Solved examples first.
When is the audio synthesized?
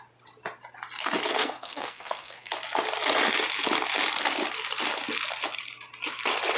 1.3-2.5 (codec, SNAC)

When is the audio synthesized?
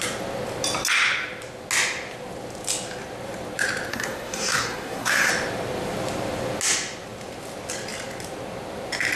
3.9-5.3 (codec, SNAC)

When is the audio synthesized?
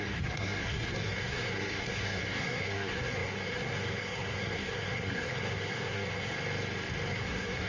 0.0-6.3 (codec, SNAC); 7.1-7.7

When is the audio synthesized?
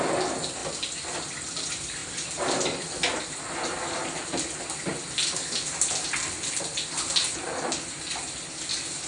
none